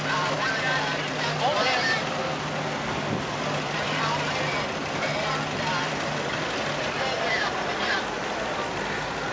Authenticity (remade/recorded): recorded